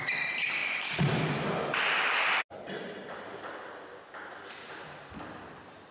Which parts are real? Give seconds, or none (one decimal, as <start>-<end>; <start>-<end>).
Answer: 0.0-5.9